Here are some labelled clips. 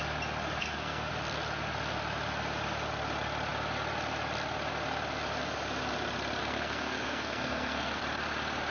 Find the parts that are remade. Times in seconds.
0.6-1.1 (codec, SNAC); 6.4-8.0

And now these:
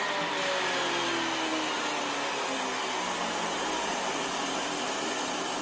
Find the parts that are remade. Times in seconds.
none

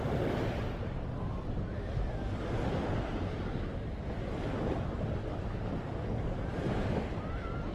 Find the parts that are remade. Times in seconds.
none

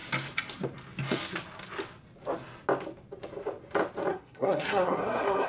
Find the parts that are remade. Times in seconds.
4.1-5.5 (codec, SNAC)